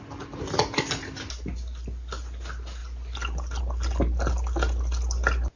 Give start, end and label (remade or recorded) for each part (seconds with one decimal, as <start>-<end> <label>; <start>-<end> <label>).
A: 0.0-5.6 recorded